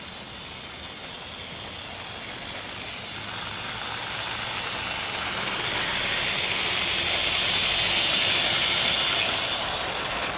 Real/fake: real